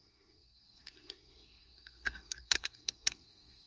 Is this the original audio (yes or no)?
no